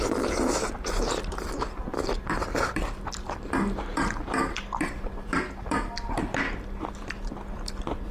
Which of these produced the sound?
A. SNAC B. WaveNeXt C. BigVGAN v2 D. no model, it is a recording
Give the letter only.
C